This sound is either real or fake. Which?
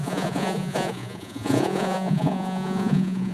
fake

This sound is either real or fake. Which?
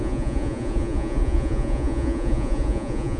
fake